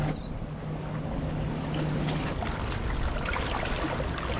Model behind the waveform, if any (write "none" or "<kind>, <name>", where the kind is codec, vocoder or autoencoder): none